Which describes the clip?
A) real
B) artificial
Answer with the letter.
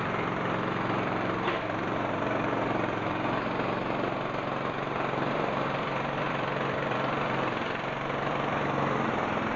B